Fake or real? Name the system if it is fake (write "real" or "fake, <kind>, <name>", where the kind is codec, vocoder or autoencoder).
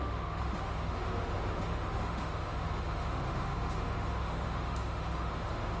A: fake, autoencoder, DAC-VAE